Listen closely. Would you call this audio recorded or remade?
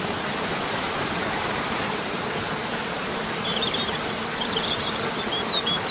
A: remade